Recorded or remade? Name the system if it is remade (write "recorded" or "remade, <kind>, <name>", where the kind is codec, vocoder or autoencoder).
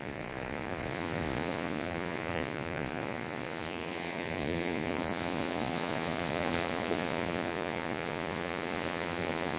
remade, vocoder, Vocos